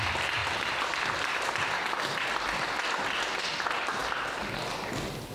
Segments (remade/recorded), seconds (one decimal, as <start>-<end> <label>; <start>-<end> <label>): 0.0-5.3 recorded